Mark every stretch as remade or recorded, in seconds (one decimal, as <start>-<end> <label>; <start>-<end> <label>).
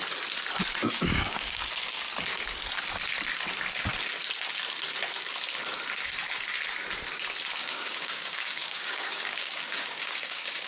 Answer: 0.0-0.8 recorded; 0.8-1.6 remade; 1.6-7.6 recorded; 7.6-10.7 remade